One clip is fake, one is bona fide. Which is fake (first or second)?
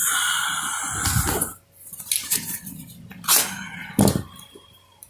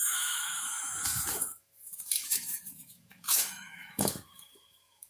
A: second